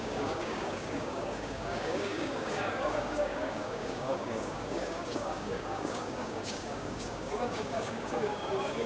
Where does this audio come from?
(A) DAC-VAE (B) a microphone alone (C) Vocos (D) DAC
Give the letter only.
D